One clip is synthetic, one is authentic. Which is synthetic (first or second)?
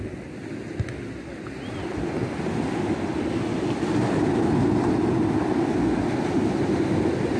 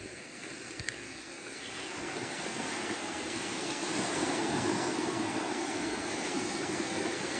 second